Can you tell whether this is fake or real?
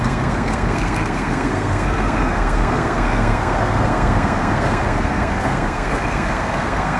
fake